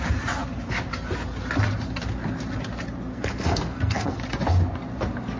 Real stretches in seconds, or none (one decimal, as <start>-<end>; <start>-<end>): 0.0-3.1; 4.2-5.4